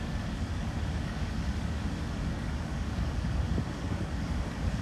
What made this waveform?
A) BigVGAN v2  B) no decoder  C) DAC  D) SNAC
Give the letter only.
C